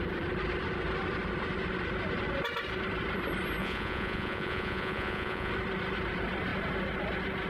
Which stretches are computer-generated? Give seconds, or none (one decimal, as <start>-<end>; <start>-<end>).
3.6-5.5